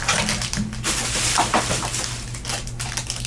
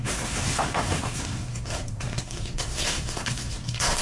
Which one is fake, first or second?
second